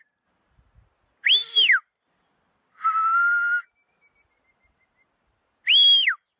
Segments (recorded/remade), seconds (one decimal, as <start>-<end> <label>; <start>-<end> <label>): 0.0-6.4 recorded